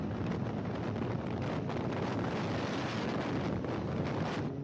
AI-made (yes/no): no